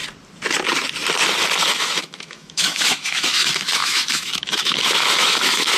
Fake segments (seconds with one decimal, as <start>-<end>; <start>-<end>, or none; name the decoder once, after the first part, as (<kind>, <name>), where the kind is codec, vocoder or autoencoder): 1.7-5.8 (autoencoder, DAC-VAE)